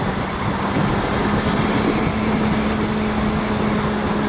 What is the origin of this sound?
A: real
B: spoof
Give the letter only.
A